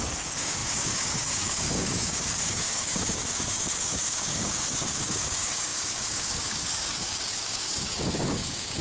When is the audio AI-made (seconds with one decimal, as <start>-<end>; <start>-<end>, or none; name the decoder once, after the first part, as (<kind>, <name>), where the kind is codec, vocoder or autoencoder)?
0.0-8.8 (codec, DAC)